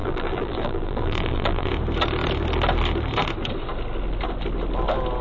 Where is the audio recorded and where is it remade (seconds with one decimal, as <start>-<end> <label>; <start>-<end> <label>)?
0.0-1.7 remade; 1.7-5.2 recorded